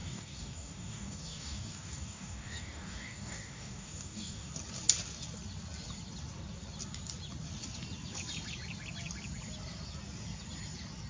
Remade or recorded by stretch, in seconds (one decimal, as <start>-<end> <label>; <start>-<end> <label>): 0.0-4.5 remade; 4.5-11.1 recorded